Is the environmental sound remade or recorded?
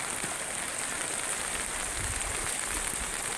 recorded